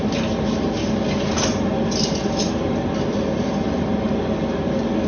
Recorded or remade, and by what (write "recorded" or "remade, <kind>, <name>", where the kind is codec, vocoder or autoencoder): recorded